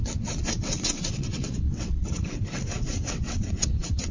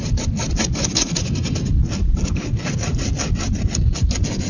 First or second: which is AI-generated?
first